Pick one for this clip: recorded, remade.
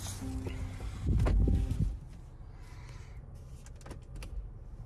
recorded